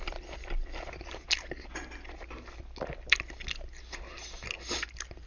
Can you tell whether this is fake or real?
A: real